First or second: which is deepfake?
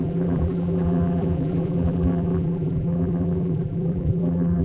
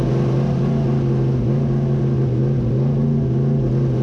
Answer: first